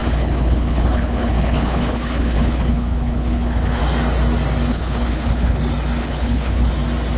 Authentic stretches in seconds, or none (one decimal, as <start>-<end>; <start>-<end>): 3.8-4.7; 5.6-6.0; 6.7-7.2